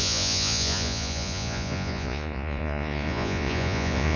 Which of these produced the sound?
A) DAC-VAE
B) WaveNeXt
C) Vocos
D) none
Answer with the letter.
C